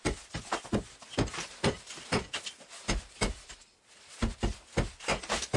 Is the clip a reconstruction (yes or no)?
no